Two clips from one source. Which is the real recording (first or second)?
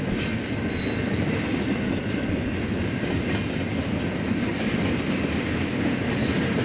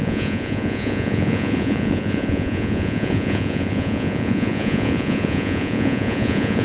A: first